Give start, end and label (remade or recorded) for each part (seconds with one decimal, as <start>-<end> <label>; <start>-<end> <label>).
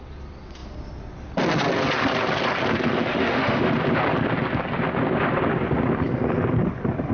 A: 0.0-3.1 recorded; 3.1-3.7 remade; 3.7-7.1 recorded